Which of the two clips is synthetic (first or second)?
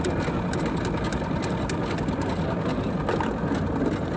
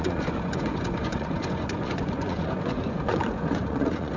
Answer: second